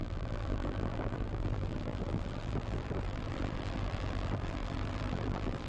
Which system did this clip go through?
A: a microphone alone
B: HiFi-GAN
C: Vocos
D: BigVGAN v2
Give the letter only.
D